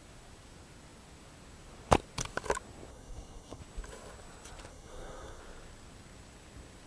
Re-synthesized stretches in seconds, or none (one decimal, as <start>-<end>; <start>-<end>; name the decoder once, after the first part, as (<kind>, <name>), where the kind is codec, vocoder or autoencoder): 2.9-3.6 (codec, SNAC); 4.7-5.4